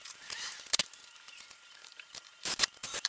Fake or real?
fake